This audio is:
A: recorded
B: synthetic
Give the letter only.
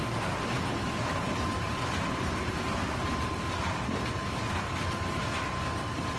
A